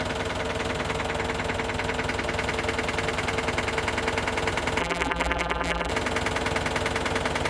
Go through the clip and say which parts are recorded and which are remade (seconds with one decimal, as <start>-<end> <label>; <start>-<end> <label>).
0.0-4.8 recorded; 4.8-5.9 remade; 5.9-7.5 recorded